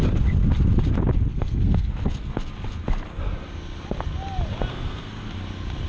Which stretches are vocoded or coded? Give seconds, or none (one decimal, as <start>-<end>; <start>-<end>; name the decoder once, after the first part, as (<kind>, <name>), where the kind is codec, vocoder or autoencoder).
1.3-1.9 (codec, SNAC); 4.7-5.3